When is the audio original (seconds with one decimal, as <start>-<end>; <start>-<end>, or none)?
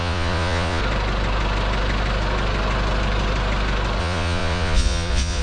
0.8-4.0